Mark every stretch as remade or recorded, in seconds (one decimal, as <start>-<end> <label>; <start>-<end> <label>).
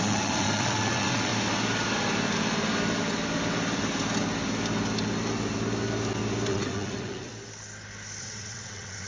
0.0-1.3 remade; 1.3-6.5 recorded; 6.5-7.3 remade; 7.3-8.2 recorded; 8.2-9.1 remade